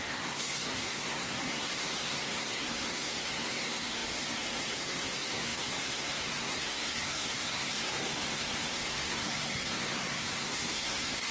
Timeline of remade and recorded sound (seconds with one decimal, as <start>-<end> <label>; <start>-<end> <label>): 0.0-11.3 remade